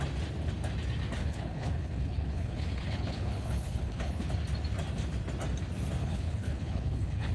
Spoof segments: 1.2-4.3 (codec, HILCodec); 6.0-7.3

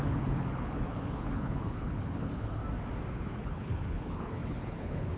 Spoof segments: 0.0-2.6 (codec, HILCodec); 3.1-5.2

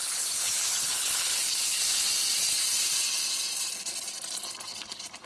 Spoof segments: 0.0-1.8 (codec, HILCodec)

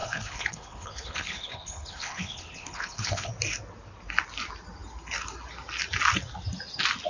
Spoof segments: 0.0-3.3 (codec, HILCodec)

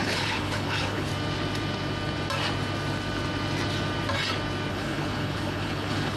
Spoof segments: 0.0-1.1 (codec, HILCodec); 4.7-6.2

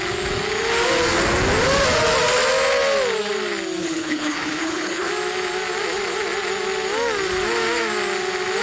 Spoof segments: 3.8-5.1 (codec, HILCodec)

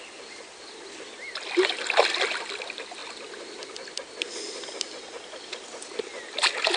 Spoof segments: none